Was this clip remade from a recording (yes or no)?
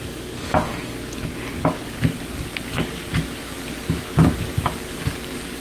yes